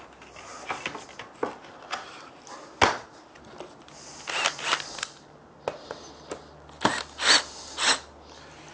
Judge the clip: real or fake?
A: real